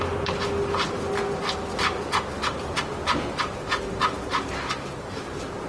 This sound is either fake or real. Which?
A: real